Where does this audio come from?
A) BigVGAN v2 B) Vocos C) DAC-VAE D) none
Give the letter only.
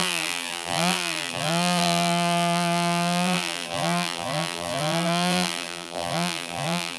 A